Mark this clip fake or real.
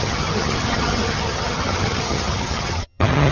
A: fake